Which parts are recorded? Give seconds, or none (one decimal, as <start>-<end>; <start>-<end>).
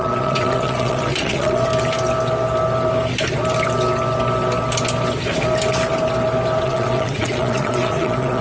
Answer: 1.7-6.6